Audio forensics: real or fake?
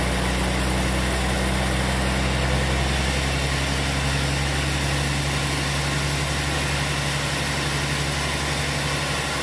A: real